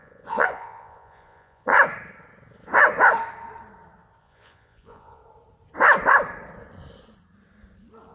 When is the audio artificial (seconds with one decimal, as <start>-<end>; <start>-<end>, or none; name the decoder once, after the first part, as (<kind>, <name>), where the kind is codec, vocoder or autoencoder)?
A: 0.0-1.7 (vocoder, Vocos); 4.2-5.2

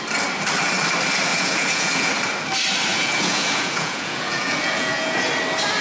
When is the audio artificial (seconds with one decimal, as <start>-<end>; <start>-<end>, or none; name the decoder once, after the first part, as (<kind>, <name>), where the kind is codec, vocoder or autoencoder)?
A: 1.3-2.1 (vocoder, Vocos); 2.9-5.3

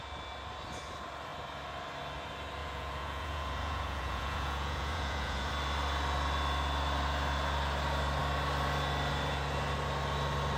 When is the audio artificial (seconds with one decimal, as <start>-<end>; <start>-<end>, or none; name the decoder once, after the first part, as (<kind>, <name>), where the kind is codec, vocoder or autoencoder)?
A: 2.6-5.5 (vocoder, Vocos)

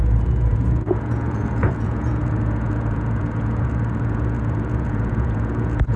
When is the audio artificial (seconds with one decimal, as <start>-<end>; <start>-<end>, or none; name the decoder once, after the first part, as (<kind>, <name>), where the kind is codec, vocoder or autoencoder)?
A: 0.0-6.0 (vocoder, Vocos)

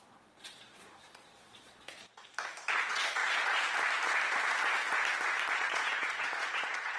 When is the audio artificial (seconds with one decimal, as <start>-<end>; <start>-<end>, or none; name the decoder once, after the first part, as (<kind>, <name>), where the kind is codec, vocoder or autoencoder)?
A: 0.0-2.0 (vocoder, Vocos); 2.7-3.2; 5.5-7.0

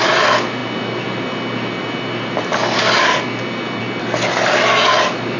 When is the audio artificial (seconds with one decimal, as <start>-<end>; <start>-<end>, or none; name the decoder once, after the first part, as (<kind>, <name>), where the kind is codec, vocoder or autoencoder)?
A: none